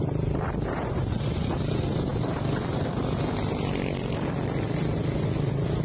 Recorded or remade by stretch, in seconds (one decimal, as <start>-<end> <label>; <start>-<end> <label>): 0.0-5.8 recorded